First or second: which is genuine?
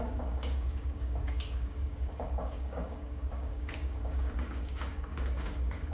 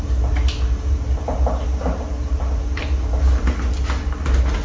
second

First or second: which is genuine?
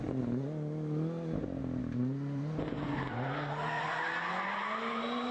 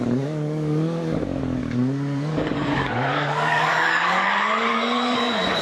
first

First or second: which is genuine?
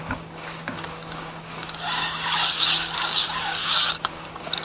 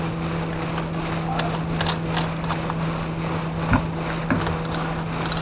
second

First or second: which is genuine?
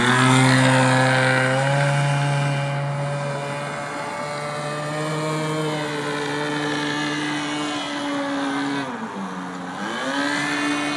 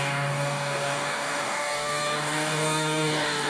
first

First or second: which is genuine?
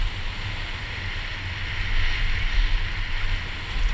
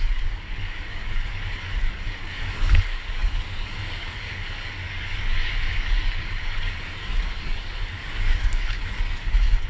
first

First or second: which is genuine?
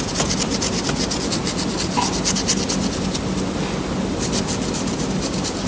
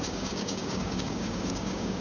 first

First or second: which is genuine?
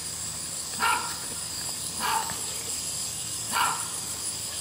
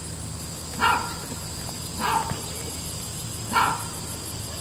second